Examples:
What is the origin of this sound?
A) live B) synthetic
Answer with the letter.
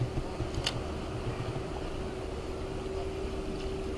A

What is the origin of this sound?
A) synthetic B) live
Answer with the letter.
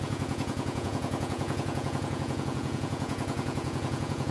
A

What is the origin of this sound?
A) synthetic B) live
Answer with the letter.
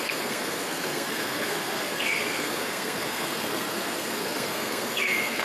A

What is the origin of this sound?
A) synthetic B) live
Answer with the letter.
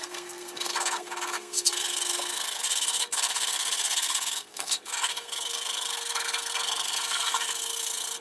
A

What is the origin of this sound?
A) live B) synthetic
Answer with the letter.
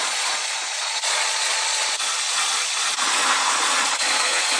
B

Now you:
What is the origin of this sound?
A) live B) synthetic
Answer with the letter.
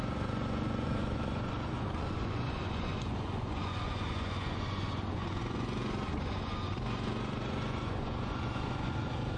B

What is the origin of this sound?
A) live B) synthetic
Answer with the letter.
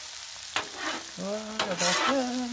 A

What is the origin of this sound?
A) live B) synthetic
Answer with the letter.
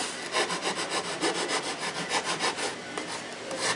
A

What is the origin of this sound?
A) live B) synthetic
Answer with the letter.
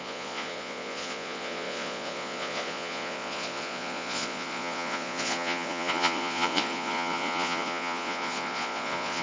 B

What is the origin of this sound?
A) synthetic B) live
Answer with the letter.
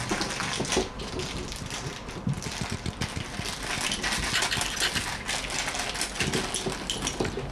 B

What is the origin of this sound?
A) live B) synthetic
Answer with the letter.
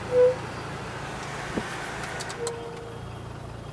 A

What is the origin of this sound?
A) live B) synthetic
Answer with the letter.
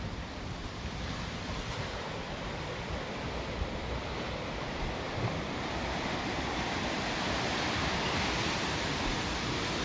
B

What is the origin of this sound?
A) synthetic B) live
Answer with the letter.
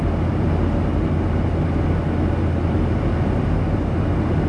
B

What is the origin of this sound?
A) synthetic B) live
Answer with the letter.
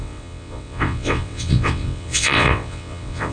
A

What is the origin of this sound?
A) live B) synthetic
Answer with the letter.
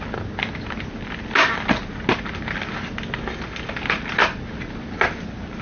A